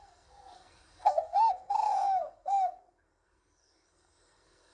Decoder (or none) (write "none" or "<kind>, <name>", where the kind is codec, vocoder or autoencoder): codec, SNAC